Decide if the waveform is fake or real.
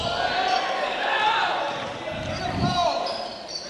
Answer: real